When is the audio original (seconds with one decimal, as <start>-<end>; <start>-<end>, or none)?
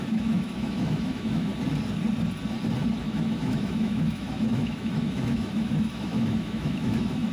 1.5-3.0